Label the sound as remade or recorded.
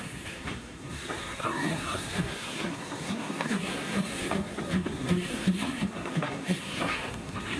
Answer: remade